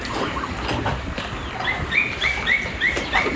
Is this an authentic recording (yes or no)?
yes